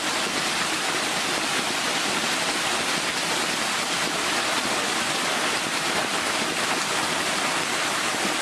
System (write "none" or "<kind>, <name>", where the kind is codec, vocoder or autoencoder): none